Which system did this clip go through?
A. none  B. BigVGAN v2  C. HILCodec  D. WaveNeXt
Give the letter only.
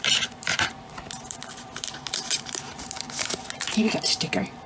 B